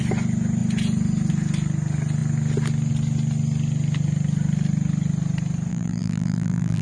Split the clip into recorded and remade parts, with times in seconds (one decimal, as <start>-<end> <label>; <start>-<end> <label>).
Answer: 0.0-5.7 recorded; 5.7-6.8 remade